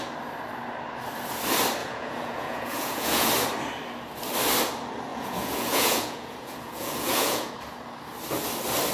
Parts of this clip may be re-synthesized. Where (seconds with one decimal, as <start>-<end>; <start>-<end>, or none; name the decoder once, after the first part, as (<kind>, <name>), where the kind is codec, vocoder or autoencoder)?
1.8-3.3 (vocoder, Vocos); 5.1-7.5